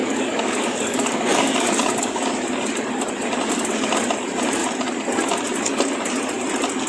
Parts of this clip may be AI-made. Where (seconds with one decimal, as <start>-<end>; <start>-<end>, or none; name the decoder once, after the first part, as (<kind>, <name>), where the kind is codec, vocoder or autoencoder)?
0.0-2.3 (codec, DAC)